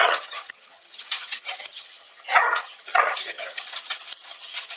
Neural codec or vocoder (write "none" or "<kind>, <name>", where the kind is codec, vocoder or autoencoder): vocoder, HiFi-GAN